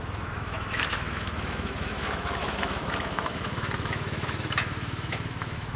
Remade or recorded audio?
remade